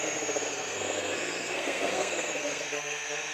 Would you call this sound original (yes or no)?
no